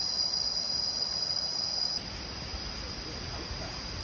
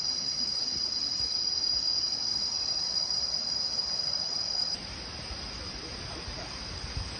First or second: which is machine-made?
second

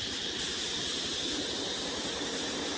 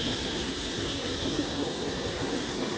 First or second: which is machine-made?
second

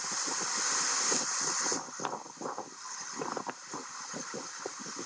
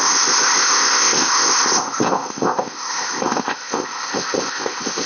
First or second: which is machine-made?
second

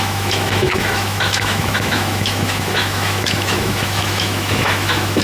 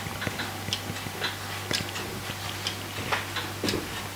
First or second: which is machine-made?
first